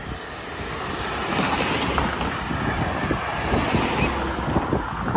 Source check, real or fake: real